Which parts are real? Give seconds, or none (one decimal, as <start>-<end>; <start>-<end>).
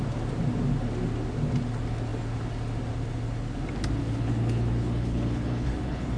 0.0-4.0